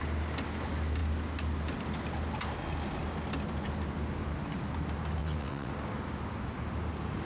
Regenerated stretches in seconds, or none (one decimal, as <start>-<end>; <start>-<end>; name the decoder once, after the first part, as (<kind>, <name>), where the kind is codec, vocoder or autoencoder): 5.2-5.7 (vocoder, WaveNeXt)